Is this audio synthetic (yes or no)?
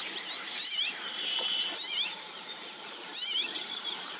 yes